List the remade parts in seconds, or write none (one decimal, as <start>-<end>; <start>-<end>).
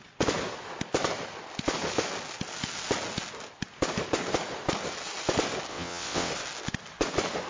5.7-6.3